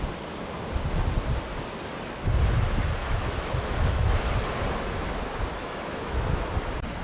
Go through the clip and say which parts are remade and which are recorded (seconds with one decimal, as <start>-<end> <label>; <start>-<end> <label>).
0.0-3.0 recorded; 3.0-4.1 remade; 4.1-5.5 recorded; 5.5-6.5 remade; 6.5-7.0 recorded

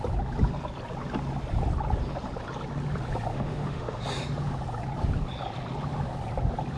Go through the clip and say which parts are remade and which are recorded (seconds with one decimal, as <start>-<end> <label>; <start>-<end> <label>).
0.0-3.3 recorded; 3.3-4.0 remade; 4.0-6.8 recorded

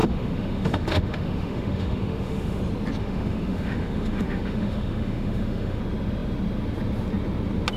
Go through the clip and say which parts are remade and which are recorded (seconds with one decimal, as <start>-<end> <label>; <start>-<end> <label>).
0.0-2.6 remade; 2.6-3.0 recorded; 3.0-5.8 remade; 5.8-7.8 recorded

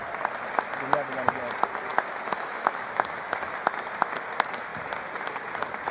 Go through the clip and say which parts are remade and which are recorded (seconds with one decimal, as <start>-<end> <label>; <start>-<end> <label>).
0.0-1.9 recorded; 1.9-3.5 remade; 3.5-5.9 recorded